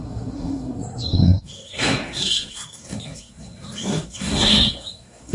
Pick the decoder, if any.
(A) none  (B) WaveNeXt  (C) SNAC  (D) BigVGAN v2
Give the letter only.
C